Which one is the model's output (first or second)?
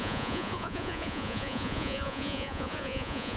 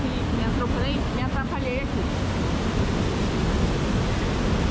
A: first